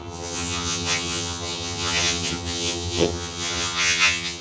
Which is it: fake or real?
fake